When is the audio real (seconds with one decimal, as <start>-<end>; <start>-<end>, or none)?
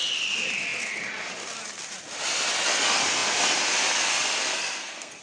0.0-4.5